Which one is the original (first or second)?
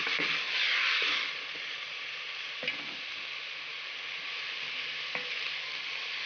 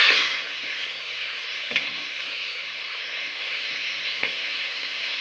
first